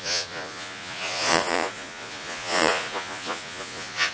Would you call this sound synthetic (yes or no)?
yes